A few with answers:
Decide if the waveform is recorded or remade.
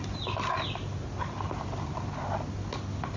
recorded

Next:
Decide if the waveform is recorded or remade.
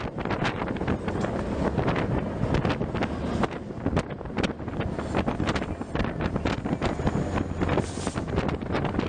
recorded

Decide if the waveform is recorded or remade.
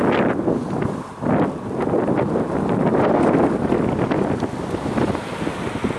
recorded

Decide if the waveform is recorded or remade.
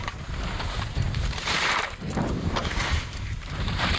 remade